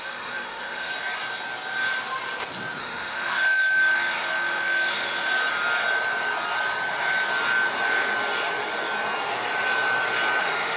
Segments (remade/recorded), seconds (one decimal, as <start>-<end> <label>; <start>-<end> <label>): 0.0-0.9 remade; 0.9-2.8 recorded; 2.8-5.3 remade; 5.3-10.4 recorded; 10.4-10.8 remade